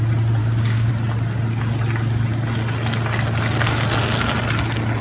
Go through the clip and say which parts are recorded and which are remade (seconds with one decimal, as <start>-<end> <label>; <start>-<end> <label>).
0.0-0.4 recorded; 0.4-0.9 remade; 0.9-5.0 recorded